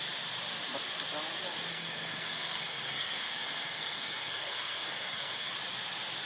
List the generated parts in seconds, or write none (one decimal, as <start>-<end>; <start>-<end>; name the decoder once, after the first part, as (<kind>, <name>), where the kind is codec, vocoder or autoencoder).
1.7-5.5 (codec, SNAC)